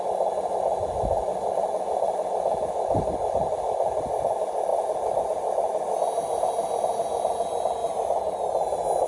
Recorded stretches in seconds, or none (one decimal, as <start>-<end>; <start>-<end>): 0.0-1.3; 2.3-9.1